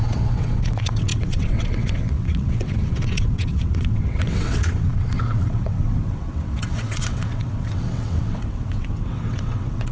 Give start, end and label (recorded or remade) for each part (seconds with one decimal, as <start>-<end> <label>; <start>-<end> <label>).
0.0-9.9 remade